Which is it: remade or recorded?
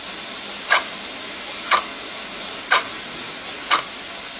recorded